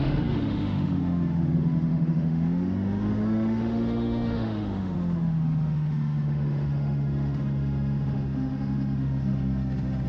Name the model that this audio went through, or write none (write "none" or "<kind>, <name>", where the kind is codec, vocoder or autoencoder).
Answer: autoencoder, DAC-VAE